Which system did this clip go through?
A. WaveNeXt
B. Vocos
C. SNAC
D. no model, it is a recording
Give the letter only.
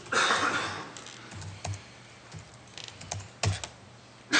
D